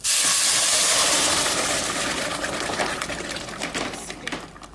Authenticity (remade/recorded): recorded